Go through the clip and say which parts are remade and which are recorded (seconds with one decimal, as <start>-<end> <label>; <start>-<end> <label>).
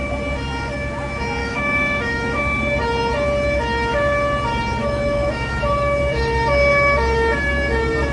0.0-1.4 recorded; 1.4-2.6 remade; 2.6-4.8 recorded; 4.8-5.6 remade; 5.6-8.1 recorded